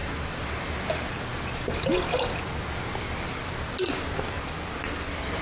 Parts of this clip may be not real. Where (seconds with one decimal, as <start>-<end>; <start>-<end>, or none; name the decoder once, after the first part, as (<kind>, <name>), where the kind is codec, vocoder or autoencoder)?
0.0-0.7 (vocoder, BigVGAN v2)